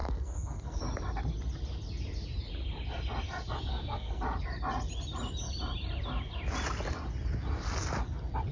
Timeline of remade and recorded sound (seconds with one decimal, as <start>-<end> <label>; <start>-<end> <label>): 0.0-0.8 remade; 0.8-3.7 recorded; 3.7-4.2 remade; 4.2-8.5 recorded